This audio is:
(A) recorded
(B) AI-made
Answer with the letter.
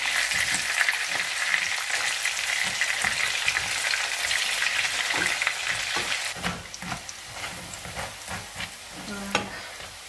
A